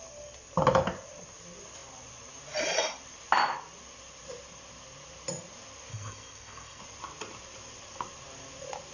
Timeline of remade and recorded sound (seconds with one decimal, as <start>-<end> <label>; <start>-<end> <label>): 0.0-5.9 recorded; 5.9-6.8 remade; 6.8-8.9 recorded